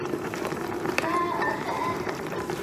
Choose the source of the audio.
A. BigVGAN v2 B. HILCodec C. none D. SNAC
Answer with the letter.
A